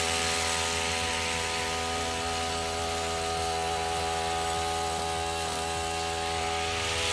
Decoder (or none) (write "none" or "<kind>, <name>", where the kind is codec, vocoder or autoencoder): none